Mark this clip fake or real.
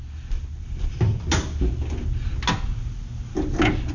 real